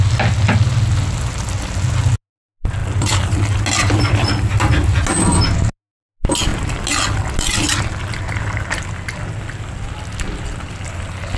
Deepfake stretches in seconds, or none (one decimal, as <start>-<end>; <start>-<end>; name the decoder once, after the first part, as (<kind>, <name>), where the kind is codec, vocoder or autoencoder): 2.8-3.6 (vocoder, BigVGAN v2)